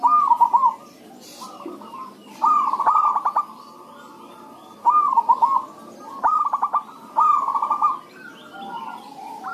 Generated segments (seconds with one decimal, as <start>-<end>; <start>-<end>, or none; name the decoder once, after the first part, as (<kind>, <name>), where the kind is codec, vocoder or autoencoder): none